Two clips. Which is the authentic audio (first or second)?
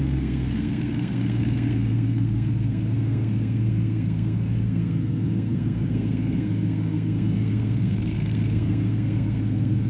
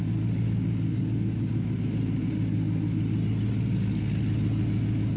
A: second